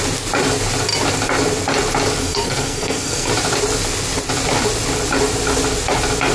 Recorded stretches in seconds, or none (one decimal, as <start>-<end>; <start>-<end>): 0.0-2.2; 3.3-6.3